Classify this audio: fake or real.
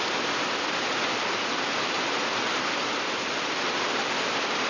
fake